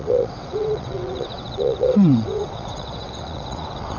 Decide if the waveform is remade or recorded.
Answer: remade